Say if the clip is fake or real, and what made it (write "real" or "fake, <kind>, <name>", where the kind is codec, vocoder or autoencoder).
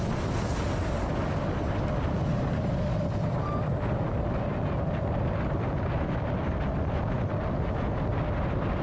real